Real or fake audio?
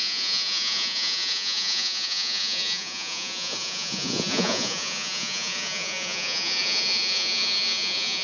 fake